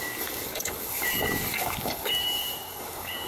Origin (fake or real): fake